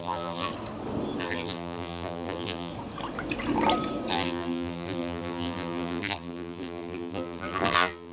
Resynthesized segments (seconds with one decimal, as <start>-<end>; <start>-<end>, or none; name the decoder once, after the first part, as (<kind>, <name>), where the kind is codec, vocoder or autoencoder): 0.0-0.5 (vocoder, BigVGAN v2); 1.2-2.7; 4.1-8.1